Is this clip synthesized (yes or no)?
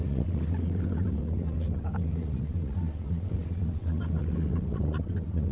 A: yes